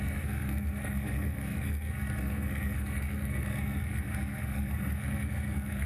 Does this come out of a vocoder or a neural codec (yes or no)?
yes